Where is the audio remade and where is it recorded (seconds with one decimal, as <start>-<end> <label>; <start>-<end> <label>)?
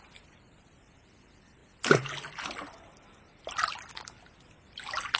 0.0-5.2 recorded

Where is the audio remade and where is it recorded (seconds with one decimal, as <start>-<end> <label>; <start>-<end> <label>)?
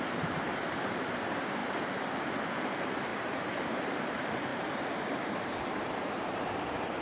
0.0-7.0 remade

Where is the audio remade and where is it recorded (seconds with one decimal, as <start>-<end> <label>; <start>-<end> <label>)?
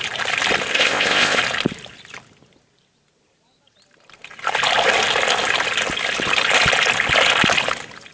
0.0-0.7 recorded; 0.7-1.4 remade; 1.4-8.1 recorded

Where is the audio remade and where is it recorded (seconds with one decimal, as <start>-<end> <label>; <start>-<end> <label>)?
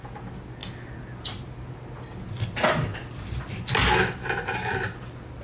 0.0-5.4 recorded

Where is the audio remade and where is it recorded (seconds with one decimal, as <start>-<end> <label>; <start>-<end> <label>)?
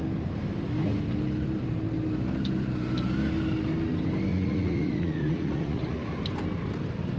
0.0-4.3 recorded; 4.3-6.2 remade; 6.2-7.2 recorded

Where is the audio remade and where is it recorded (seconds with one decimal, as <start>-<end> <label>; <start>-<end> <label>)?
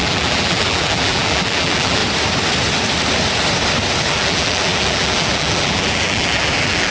0.0-2.0 remade; 2.0-4.1 recorded; 4.1-6.9 remade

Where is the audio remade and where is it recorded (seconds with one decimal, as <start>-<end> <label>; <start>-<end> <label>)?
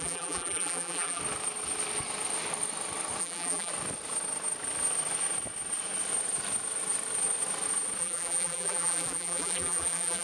0.0-1.2 remade; 1.2-3.2 recorded; 3.2-3.7 remade; 3.7-8.0 recorded; 8.0-10.2 remade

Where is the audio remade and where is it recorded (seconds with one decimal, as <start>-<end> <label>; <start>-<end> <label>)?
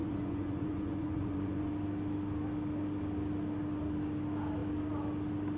0.0-1.7 remade; 1.7-5.6 recorded